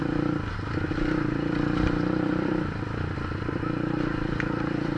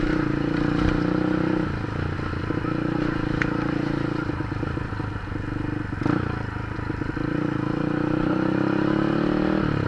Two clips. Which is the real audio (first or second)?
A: second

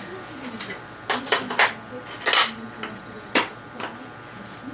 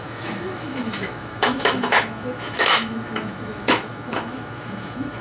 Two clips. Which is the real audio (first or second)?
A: first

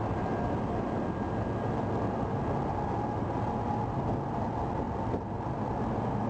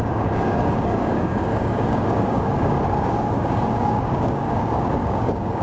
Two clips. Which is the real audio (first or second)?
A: first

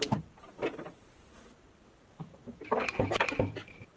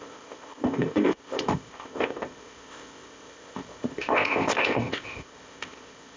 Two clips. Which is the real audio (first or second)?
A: first